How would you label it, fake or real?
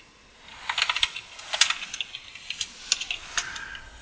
real